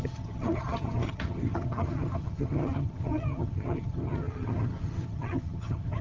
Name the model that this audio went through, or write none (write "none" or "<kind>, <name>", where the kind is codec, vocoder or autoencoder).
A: vocoder, HiFi-GAN